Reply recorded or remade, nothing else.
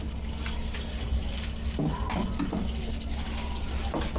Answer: recorded